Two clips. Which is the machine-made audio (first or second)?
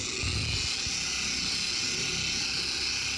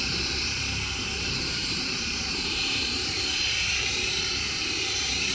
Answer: second